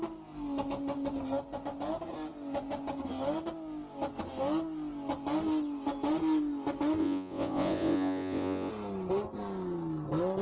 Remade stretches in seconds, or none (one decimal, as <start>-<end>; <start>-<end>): 7.0-8.7